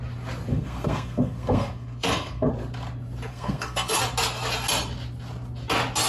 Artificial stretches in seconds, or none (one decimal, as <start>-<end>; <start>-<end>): 0.5-2.5; 3.3-4.0